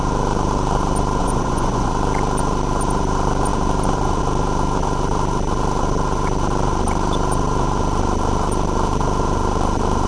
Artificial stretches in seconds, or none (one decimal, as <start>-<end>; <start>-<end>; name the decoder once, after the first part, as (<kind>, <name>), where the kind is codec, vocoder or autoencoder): 1.2-1.9 (vocoder, Vocos)